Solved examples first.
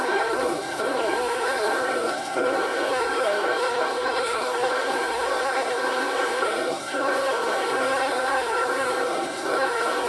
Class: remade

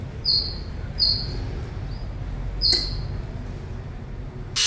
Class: recorded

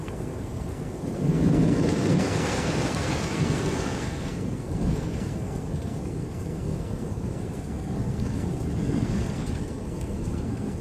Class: remade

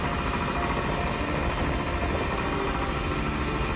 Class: recorded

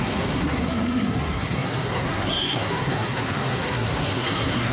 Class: remade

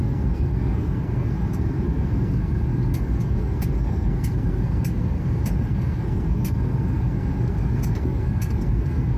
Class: remade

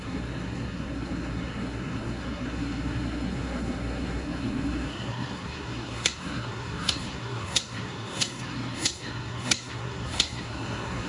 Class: remade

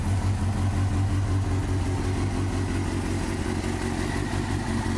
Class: recorded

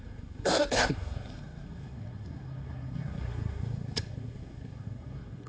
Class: remade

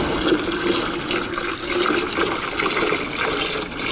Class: recorded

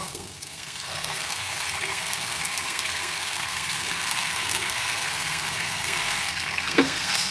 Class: remade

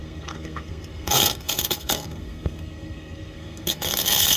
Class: remade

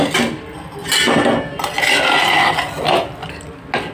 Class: recorded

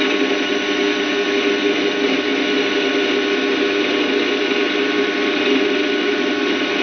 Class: recorded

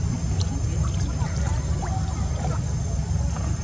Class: recorded